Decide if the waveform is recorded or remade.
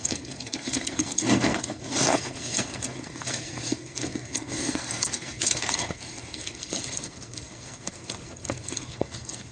remade